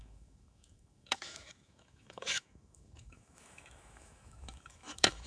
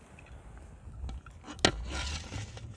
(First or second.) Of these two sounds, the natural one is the second